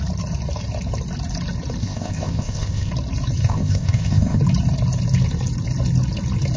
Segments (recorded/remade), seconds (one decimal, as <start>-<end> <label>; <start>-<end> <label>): 0.0-1.8 recorded; 1.8-2.9 remade; 2.9-3.4 recorded; 3.4-4.4 remade; 4.4-6.6 recorded

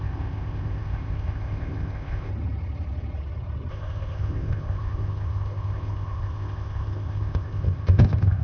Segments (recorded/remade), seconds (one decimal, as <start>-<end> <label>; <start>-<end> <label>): 0.0-2.3 remade; 2.3-3.7 recorded; 3.7-8.4 remade

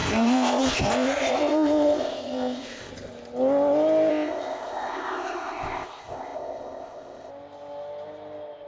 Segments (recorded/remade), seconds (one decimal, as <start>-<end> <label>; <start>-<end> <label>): 0.0-2.9 remade; 2.9-4.1 recorded; 4.1-7.3 remade; 7.3-8.7 recorded

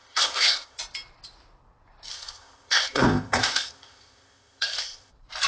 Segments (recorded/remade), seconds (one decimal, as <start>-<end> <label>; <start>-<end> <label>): 0.0-0.8 remade; 0.8-2.1 recorded; 2.1-5.1 remade; 5.1-5.5 recorded

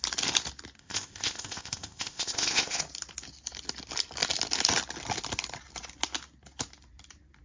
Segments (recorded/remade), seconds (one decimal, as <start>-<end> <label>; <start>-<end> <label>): 0.0-0.8 recorded; 0.8-2.8 remade; 2.8-7.4 recorded

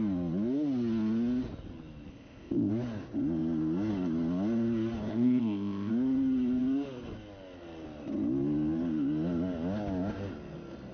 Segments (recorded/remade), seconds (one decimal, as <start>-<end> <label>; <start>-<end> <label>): 0.0-2.1 recorded; 2.1-2.7 remade; 2.7-5.1 recorded; 5.1-5.9 remade; 5.9-10.9 recorded

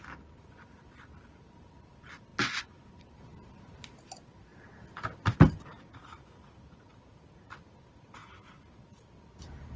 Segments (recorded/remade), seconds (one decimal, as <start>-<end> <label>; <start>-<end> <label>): 0.0-9.8 recorded